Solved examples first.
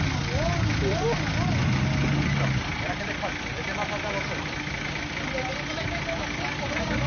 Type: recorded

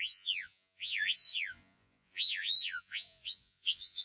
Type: remade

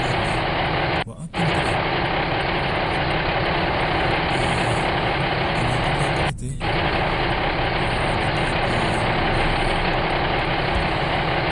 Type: recorded